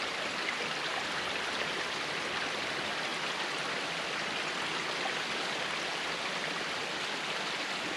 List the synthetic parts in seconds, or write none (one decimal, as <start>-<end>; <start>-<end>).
none